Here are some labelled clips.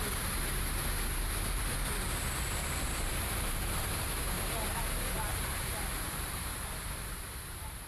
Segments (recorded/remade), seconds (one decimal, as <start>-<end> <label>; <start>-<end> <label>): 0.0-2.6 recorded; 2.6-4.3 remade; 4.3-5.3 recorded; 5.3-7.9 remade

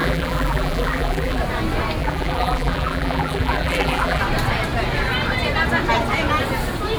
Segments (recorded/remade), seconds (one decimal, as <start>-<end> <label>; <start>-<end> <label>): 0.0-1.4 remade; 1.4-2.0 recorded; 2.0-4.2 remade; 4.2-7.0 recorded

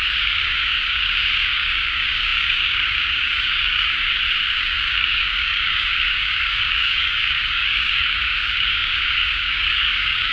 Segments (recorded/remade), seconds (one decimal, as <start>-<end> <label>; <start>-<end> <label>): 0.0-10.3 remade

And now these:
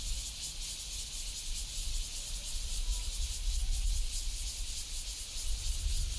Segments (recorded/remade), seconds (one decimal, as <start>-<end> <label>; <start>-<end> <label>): 0.0-6.2 recorded